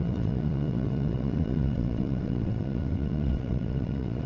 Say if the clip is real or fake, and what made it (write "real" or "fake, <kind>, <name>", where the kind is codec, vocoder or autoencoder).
fake, vocoder, WaveNeXt